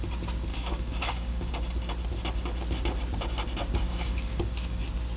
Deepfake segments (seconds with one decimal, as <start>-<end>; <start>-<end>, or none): 0.5-1.5; 3.9-4.4